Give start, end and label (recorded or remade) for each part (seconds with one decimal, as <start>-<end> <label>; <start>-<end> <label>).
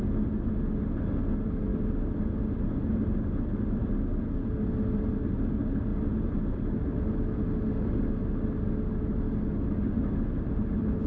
0.0-11.1 recorded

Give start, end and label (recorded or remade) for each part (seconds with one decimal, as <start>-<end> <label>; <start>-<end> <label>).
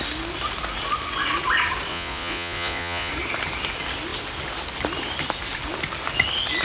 0.0-1.9 recorded; 1.9-3.1 remade; 3.1-6.6 recorded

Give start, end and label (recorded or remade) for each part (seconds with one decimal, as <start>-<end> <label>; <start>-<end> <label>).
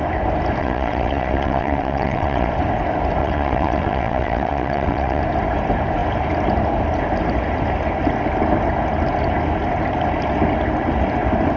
0.0-0.6 recorded; 0.6-2.5 remade; 2.5-3.2 recorded; 3.2-5.2 remade; 5.2-11.6 recorded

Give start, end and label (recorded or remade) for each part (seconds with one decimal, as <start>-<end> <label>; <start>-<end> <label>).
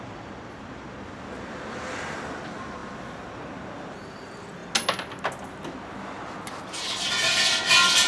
0.0-8.1 recorded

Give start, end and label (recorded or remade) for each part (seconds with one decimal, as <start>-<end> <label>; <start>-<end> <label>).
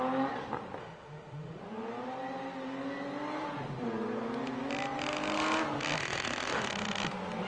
0.0-0.8 recorded; 0.8-1.6 remade; 1.6-6.0 recorded; 6.0-6.7 remade; 6.7-7.5 recorded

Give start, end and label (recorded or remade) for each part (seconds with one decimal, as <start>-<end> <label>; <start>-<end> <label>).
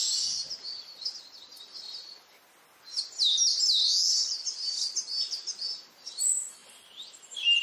0.0-7.6 recorded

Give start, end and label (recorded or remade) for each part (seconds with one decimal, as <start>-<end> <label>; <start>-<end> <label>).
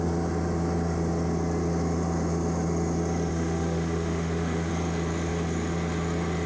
0.0-3.3 recorded; 3.3-4.7 remade; 4.7-6.5 recorded